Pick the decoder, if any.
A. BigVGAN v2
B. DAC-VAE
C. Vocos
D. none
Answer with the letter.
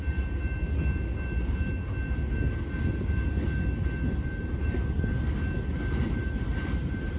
D